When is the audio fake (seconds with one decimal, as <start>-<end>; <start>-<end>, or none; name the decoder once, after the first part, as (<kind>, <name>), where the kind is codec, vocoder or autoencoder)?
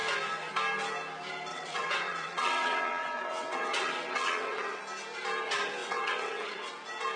1.5-4.8 (vocoder, WaveNeXt); 5.8-6.7